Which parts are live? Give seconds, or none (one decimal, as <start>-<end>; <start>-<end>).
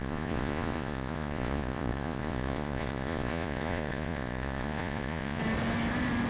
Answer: 5.4-6.3